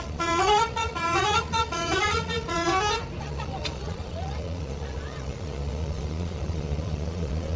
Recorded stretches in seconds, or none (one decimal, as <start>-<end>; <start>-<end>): 2.7-3.2